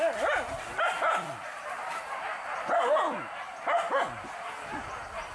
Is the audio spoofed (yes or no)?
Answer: no